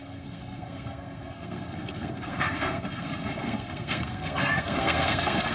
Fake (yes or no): yes